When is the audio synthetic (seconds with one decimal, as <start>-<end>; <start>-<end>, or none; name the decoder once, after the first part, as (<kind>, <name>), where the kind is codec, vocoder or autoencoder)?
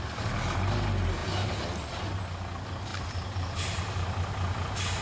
2.9-3.8 (vocoder, BigVGAN v2)